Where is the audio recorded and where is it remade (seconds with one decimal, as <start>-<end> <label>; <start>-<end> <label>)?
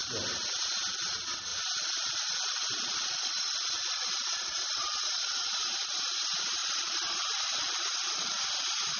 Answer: 0.0-1.5 recorded; 1.5-5.0 remade; 5.0-6.6 recorded; 6.6-8.4 remade; 8.4-9.0 recorded